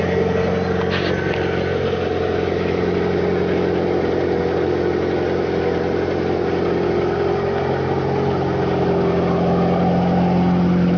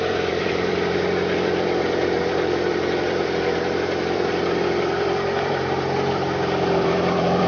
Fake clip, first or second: second